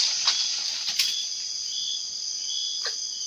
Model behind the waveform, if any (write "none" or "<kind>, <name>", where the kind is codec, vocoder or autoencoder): none